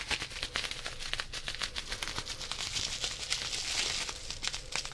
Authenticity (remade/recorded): recorded